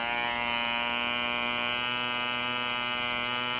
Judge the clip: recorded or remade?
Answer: recorded